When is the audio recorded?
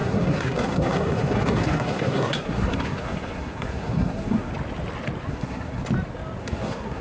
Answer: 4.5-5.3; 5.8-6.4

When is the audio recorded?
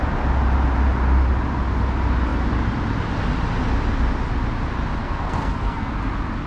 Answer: 0.0-5.0; 5.9-6.5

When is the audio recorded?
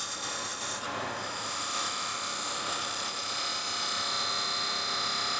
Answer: 0.0-0.5; 3.1-5.4